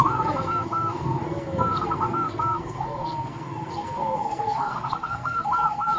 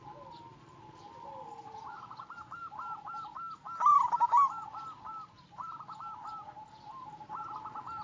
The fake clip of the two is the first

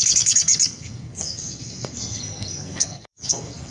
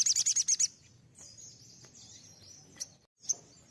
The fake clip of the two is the first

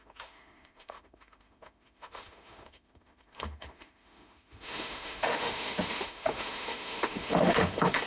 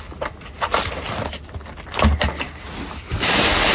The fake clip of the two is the first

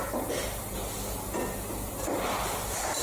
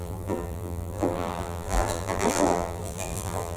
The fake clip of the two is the second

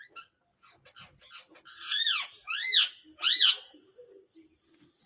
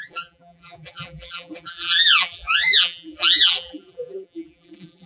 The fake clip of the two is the second